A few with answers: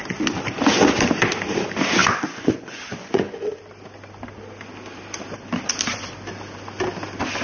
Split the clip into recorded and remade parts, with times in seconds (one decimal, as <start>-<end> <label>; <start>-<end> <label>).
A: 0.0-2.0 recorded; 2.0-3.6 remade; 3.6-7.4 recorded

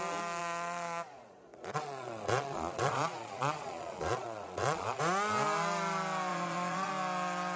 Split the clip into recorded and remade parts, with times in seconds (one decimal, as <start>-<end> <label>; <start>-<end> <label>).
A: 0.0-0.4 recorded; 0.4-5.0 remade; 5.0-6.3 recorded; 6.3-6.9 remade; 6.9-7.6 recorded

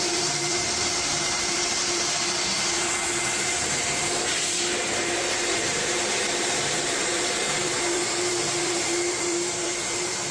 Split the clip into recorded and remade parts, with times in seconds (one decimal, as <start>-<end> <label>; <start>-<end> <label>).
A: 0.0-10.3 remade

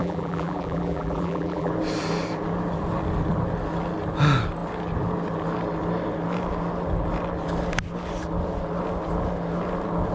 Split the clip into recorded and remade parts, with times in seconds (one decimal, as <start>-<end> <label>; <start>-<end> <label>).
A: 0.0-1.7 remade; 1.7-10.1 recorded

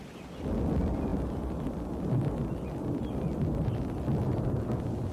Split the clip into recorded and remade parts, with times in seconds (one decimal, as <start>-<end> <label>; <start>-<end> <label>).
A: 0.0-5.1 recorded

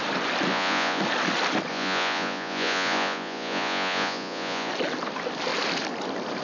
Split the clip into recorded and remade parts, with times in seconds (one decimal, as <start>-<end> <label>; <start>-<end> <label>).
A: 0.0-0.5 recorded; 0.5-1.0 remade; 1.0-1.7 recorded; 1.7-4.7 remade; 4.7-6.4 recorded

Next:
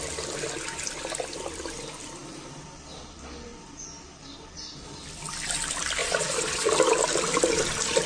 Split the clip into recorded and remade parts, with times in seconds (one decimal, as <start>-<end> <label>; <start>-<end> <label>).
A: 0.0-6.0 recorded; 6.0-6.7 remade; 6.7-8.1 recorded

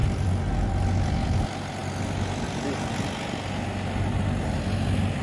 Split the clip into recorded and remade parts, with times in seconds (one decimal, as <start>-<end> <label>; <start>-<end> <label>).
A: 0.0-5.2 recorded